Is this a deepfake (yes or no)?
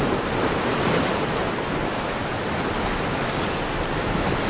no